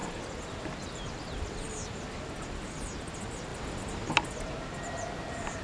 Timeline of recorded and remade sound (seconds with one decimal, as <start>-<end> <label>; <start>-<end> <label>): 0.0-5.6 recorded